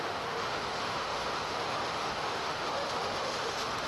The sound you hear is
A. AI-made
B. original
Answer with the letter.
A